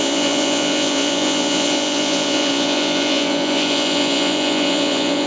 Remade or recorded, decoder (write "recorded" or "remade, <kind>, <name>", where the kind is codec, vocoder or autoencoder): remade, vocoder, Vocos